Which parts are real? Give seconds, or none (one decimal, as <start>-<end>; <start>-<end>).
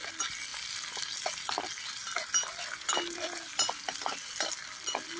0.0-5.2